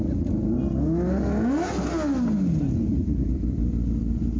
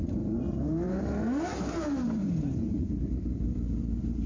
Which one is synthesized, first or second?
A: second